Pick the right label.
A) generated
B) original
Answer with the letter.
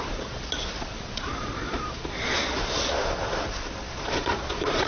A